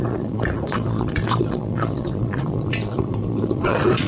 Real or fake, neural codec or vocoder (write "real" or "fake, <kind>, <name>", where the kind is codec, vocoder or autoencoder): fake, vocoder, Vocos